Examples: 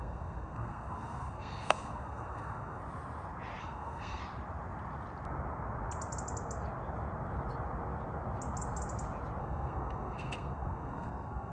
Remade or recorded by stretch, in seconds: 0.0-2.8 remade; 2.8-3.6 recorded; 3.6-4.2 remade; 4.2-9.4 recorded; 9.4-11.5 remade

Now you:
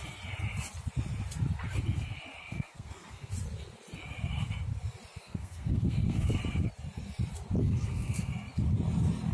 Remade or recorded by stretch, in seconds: 0.0-2.4 recorded; 2.4-3.3 remade; 3.3-5.2 recorded; 5.2-6.4 remade; 6.4-7.6 recorded; 7.6-8.3 remade; 8.3-9.3 recorded

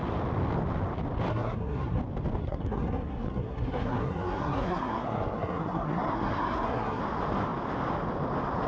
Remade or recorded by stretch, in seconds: 0.0-1.3 recorded; 1.3-2.0 remade; 2.0-2.4 recorded; 2.4-7.0 remade; 7.0-8.7 recorded